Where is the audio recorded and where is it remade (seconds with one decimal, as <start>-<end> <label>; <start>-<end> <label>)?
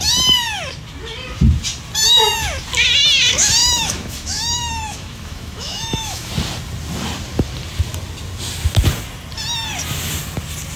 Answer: 0.0-3.6 recorded; 3.6-6.3 remade; 6.3-10.8 recorded